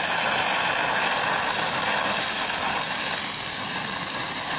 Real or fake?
real